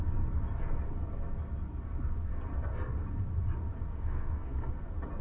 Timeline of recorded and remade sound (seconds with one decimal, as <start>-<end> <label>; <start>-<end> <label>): 0.0-3.9 recorded; 3.9-4.7 remade; 4.7-5.2 recorded